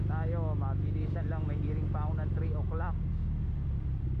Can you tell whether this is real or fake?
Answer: real